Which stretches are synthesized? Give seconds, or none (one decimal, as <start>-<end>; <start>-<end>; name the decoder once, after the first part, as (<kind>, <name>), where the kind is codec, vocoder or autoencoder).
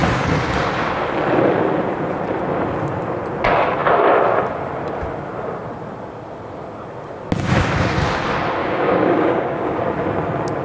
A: 8.6-9.8 (codec, DAC)